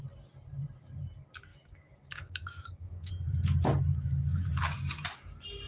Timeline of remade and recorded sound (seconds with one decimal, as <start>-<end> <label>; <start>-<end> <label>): 0.0-1.5 recorded; 1.5-3.1 remade; 3.1-3.9 recorded; 3.9-4.5 remade; 4.5-5.7 recorded